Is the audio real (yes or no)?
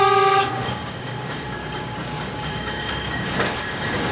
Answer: no